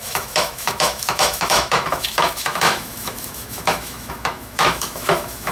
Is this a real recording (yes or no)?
no